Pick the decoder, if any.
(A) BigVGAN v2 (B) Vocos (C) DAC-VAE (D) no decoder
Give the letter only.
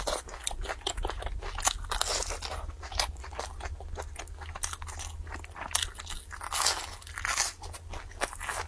D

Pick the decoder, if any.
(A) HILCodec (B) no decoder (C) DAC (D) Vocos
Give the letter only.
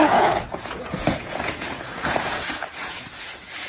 D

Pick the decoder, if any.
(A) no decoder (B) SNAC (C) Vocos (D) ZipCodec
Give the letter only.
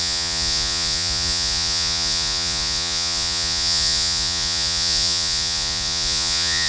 C